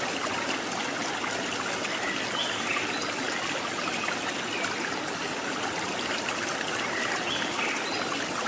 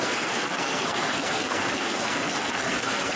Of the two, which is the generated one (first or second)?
second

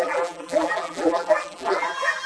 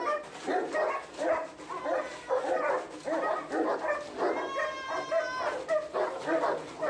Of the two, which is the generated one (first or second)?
first